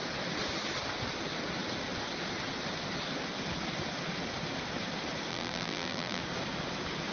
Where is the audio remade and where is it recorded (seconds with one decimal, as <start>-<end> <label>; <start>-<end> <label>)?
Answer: 0.0-5.3 recorded; 5.3-6.2 remade; 6.2-7.1 recorded